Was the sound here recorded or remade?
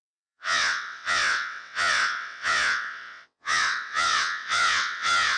remade